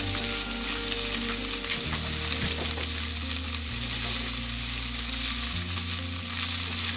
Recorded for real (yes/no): yes